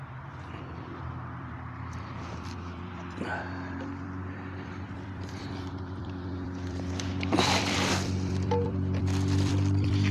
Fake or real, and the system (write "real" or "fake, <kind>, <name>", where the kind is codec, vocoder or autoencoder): fake, vocoder, BigVGAN v2